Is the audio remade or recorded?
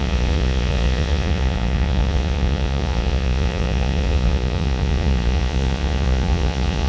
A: remade